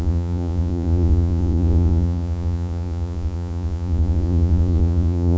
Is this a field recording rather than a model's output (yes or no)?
no